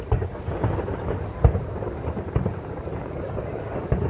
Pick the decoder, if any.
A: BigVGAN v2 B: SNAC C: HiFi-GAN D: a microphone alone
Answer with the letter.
D